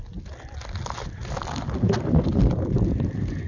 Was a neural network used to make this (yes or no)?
no